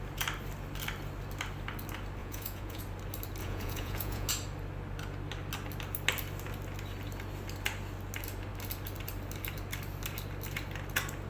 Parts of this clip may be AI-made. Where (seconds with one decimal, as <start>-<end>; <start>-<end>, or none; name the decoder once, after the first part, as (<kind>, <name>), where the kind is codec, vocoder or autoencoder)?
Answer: 2.2-2.8 (vocoder, Vocos); 3.4-4.3